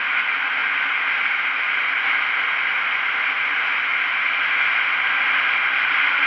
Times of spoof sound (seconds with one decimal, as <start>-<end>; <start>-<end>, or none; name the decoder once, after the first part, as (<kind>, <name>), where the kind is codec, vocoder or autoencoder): none